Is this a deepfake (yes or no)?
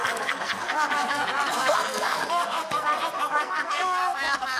yes